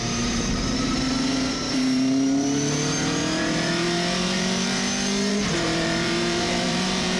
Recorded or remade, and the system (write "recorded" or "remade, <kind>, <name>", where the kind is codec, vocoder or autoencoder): remade, vocoder, BigVGAN v2